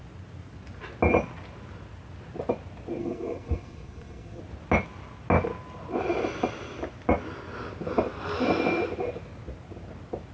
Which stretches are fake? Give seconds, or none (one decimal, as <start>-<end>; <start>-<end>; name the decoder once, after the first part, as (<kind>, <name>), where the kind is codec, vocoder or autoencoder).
3.0-4.4 (codec, SNAC)